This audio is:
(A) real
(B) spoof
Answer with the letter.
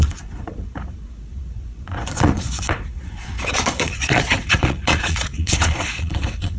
B